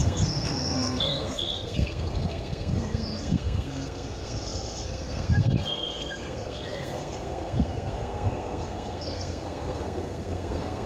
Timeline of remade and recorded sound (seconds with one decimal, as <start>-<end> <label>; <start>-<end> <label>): 0.0-10.9 remade